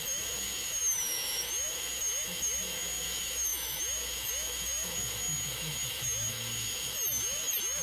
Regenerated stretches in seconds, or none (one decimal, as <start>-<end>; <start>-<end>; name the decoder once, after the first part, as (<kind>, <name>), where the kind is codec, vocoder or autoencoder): 0.0-7.8 (autoencoder, DAC-VAE)